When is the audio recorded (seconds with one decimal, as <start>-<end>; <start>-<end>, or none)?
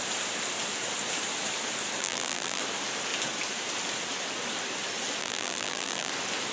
0.0-2.0; 2.6-5.2; 6.1-6.5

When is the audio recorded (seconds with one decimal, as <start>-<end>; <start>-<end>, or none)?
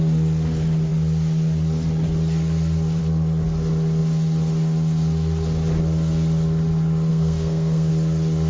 0.0-7.1; 7.9-8.5